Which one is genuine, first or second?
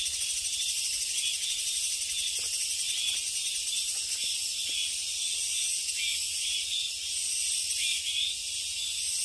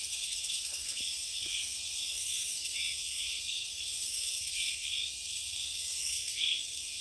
first